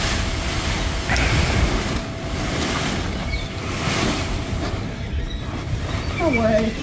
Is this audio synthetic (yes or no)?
no